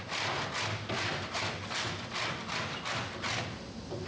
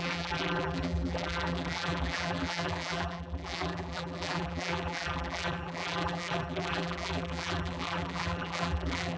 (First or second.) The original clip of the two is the first